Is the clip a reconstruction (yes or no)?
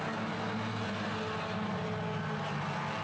no